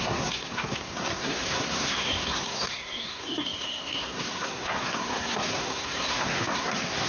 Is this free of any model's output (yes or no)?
no